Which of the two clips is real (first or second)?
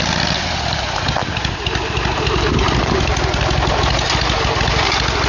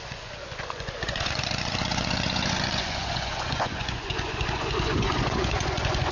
first